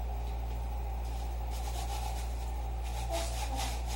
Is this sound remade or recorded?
recorded